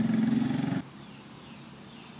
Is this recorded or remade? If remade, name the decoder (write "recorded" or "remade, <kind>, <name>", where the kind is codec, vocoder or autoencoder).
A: recorded